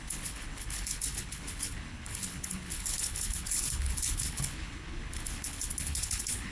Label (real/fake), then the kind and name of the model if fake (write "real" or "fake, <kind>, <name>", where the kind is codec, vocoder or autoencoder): fake, codec, HILCodec